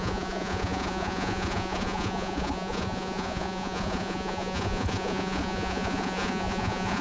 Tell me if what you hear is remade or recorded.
remade